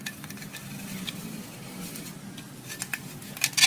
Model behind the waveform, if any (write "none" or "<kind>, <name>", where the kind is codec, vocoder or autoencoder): none